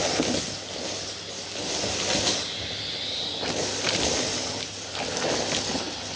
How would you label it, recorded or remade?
recorded